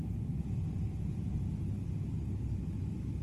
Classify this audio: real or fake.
real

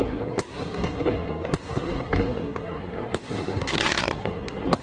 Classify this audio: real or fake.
fake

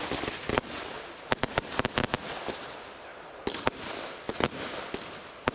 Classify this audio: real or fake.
real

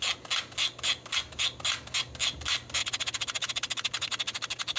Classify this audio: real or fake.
real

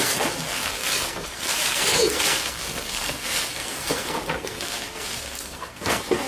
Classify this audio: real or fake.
fake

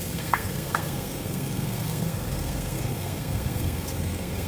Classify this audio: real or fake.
fake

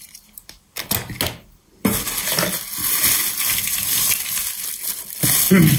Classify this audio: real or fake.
real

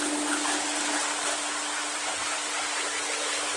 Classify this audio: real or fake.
real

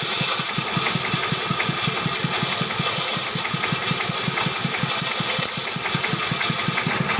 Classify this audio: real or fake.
real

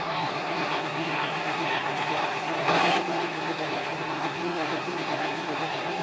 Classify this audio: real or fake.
fake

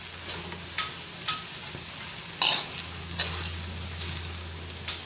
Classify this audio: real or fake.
real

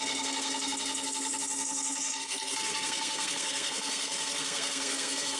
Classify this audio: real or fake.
fake